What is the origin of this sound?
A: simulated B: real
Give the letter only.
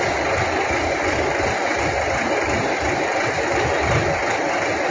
B